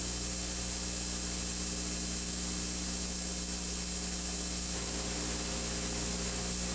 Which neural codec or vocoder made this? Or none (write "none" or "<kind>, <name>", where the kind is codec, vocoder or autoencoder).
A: none